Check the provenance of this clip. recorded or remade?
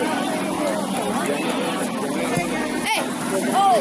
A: recorded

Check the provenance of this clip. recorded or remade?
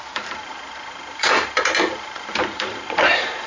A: remade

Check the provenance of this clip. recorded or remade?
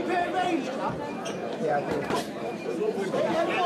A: remade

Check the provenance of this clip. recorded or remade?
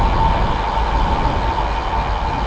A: recorded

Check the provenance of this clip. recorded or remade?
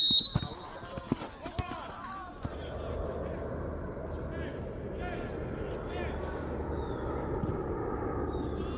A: recorded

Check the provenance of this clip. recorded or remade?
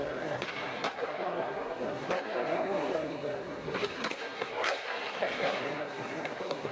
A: remade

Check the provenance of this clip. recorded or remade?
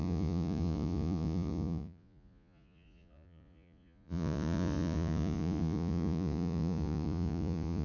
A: remade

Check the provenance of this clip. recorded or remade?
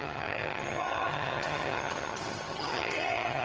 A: remade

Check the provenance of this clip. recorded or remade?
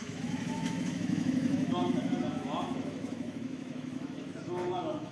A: remade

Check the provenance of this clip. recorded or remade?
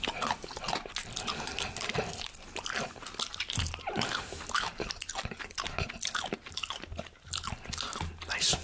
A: recorded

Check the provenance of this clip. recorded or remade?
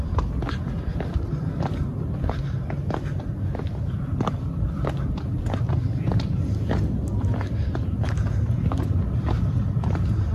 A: recorded